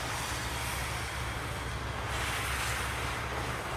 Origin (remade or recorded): recorded